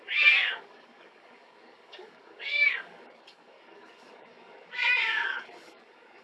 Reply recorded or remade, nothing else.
remade